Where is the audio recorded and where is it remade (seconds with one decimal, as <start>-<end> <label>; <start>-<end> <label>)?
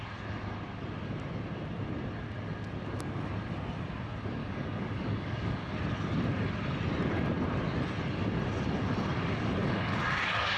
0.0-4.4 recorded; 4.4-5.7 remade; 5.7-9.6 recorded; 9.6-10.6 remade